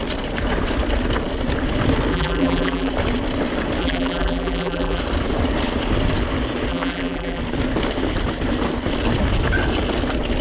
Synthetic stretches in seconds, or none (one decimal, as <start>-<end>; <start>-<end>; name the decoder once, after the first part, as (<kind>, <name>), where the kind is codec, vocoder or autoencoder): 2.1-2.9 (vocoder, BigVGAN v2); 3.8-5.0; 6.7-7.4